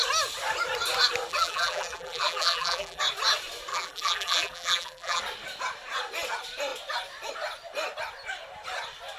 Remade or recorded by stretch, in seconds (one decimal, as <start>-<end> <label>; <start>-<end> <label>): 0.0-1.3 recorded; 1.3-3.0 remade; 3.0-3.7 recorded; 3.7-5.2 remade; 5.2-9.2 recorded